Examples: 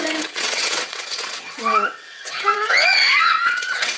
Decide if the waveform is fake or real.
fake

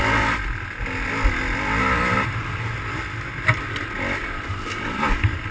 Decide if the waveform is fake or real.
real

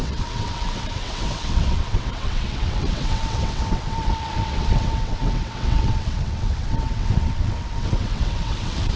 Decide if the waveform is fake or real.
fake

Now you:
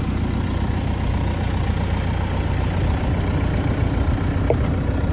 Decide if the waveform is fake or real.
real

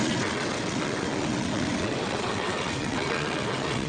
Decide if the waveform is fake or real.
fake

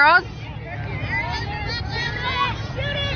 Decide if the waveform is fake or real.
real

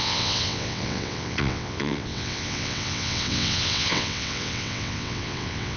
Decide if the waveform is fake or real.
fake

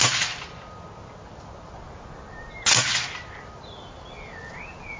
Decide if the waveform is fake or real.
real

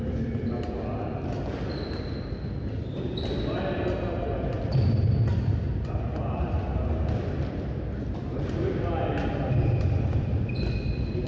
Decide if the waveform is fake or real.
real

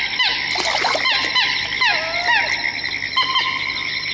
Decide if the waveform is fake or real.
real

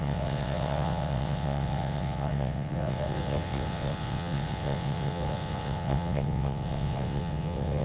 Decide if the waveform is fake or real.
fake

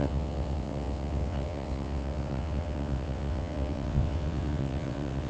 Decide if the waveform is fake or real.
fake